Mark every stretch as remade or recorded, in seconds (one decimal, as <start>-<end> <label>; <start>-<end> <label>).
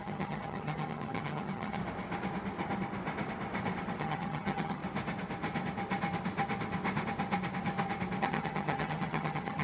0.0-1.8 remade; 1.8-4.0 recorded; 4.0-4.8 remade; 4.8-8.2 recorded; 8.2-9.6 remade